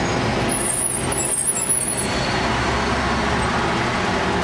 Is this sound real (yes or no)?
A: yes